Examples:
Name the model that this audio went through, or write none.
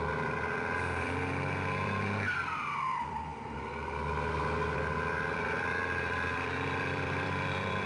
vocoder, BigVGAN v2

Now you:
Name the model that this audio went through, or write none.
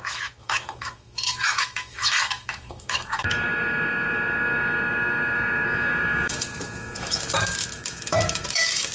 autoencoder, DAC-VAE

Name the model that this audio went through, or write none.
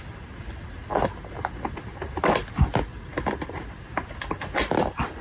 none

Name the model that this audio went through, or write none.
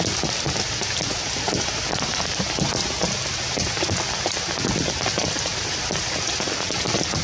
none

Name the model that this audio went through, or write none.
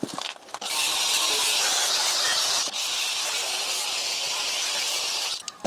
none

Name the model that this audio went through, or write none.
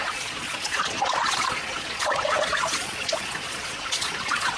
vocoder, Vocos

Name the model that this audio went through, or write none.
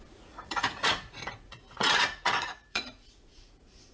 vocoder, Vocos